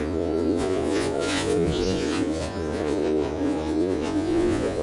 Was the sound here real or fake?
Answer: fake